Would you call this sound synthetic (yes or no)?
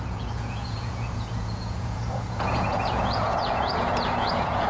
yes